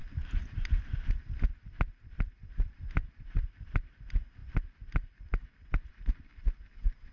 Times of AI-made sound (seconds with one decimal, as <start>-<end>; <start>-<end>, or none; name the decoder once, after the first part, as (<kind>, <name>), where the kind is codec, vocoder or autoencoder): none